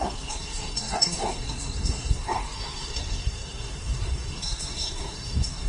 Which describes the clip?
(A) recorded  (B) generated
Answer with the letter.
B